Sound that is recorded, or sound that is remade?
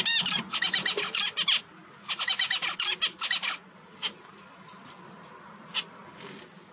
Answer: recorded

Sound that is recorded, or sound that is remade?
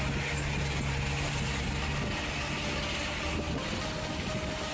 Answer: recorded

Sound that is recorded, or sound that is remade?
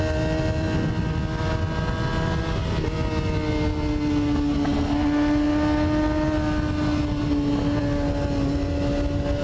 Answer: recorded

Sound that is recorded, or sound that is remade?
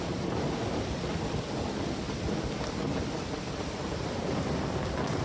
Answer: recorded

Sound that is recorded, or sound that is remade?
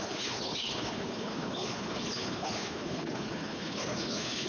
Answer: remade